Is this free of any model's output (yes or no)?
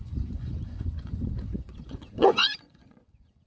no